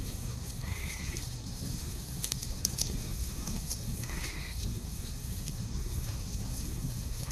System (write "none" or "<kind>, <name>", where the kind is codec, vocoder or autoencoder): codec, SNAC